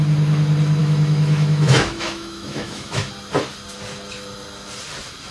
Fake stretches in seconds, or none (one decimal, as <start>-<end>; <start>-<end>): 0.8-3.1